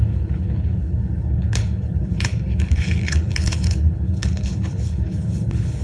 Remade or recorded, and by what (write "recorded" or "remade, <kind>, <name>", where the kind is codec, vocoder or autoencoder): remade, codec, HILCodec